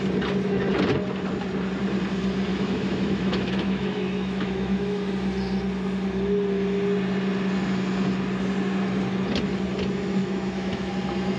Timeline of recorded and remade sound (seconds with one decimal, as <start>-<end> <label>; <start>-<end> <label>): 0.0-2.5 recorded; 2.5-5.1 remade; 5.1-10.2 recorded; 10.2-10.9 remade; 10.9-11.4 recorded